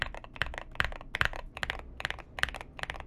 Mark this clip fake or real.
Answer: real